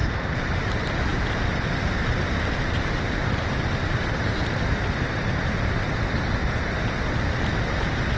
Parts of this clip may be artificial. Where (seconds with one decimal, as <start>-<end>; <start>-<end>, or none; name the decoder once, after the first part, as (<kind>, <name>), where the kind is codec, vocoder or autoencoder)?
0.0-0.7 (vocoder, BigVGAN v2); 1.1-5.4; 6.4-7.1